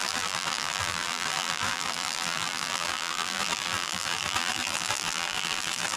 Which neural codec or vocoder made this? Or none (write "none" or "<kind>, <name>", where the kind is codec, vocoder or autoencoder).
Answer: vocoder, BigVGAN v2